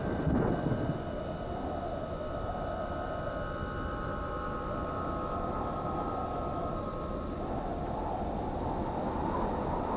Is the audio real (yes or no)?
yes